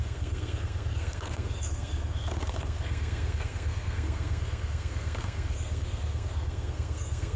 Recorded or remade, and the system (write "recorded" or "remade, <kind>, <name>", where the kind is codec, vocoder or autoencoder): remade, codec, SNAC